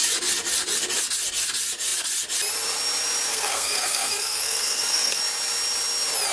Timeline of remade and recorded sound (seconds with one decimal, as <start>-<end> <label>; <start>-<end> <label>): 0.0-3.3 recorded; 3.3-5.2 remade; 5.2-6.3 recorded